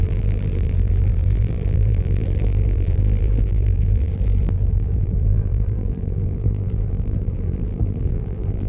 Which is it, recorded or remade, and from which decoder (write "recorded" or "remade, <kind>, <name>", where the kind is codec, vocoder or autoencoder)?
remade, vocoder, BigVGAN v2